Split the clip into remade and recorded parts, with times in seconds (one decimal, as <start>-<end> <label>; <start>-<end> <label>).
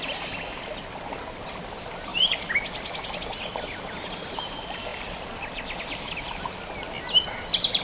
0.0-7.8 recorded